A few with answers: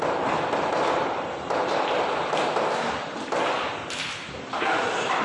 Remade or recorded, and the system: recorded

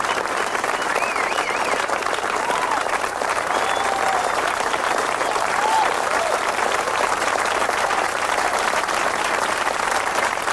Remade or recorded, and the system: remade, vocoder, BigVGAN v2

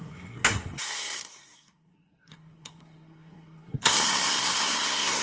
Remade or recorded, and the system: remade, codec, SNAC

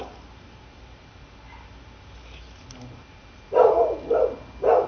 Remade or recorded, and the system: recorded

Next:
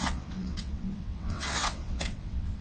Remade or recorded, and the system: remade, vocoder, WaveNeXt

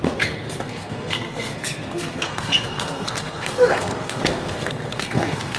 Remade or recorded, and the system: remade, codec, SNAC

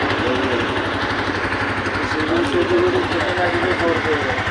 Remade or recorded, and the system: recorded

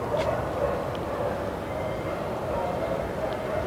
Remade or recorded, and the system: recorded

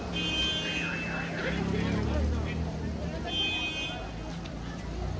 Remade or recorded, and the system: recorded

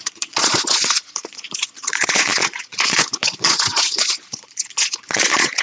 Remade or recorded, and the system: remade, vocoder, Vocos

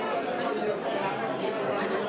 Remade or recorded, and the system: recorded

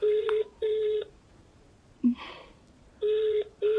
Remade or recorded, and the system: remade, vocoder, Vocos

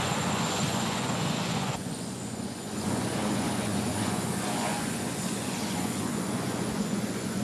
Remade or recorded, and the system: remade, vocoder, Vocos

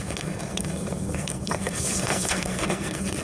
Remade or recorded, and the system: remade, codec, SNAC